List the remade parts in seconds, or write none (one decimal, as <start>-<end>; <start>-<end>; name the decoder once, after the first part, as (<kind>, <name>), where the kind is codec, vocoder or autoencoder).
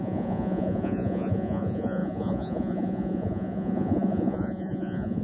0.0-5.2 (vocoder, Vocos)